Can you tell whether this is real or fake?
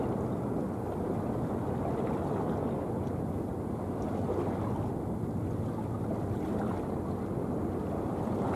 real